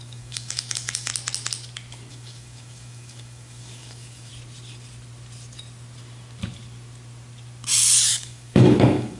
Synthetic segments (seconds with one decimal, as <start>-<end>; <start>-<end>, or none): 0.0-1.1; 2.1-4.3; 8.1-9.2